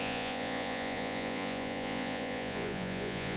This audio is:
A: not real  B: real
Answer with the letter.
A